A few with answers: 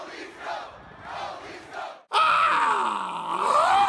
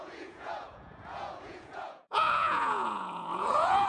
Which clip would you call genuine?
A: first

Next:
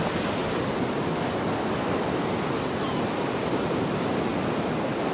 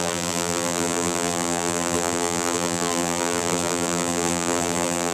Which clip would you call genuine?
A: first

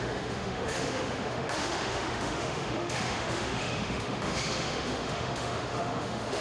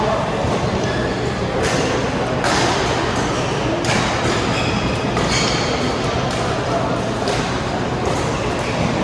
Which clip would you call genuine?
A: second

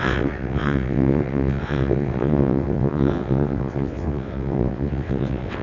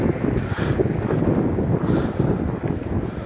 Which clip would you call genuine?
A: second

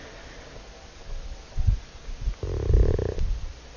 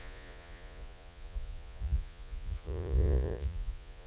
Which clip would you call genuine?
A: first